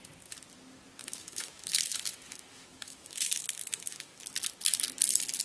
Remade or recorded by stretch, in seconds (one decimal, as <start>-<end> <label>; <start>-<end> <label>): 0.0-1.0 recorded; 1.0-4.2 remade; 4.2-5.4 recorded